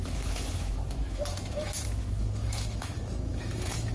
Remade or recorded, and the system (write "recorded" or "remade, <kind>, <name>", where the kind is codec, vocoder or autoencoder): remade, autoencoder, DAC-VAE